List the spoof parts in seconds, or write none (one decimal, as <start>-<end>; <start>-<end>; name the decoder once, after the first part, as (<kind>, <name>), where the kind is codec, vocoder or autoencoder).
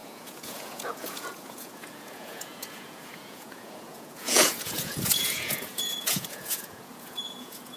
0.0-7.8 (vocoder, Vocos)